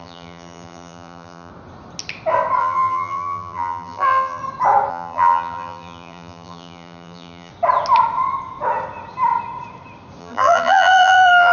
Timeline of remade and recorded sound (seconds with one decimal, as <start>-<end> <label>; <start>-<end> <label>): 0.0-1.5 remade; 1.5-2.6 recorded; 2.6-4.4 remade; 4.4-4.9 recorded; 4.9-7.5 remade; 7.5-10.2 recorded; 10.2-11.5 remade